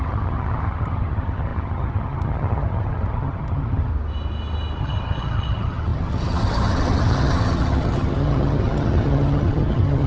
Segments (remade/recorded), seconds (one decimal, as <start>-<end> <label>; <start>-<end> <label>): 0.0-3.9 remade; 3.9-4.8 recorded; 4.8-10.1 remade